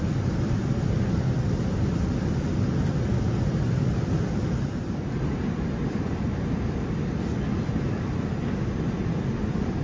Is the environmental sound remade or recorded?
remade